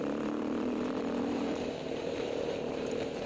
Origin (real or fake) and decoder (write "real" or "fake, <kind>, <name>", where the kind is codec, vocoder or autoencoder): fake, vocoder, BigVGAN v2